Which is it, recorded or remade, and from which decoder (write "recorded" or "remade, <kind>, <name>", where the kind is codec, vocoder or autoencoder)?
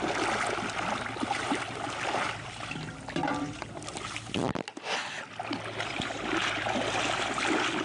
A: recorded